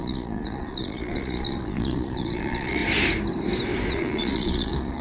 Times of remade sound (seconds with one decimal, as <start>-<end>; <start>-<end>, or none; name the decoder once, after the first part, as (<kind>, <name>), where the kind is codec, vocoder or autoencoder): 0.0-2.8 (vocoder, Vocos); 3.9-5.0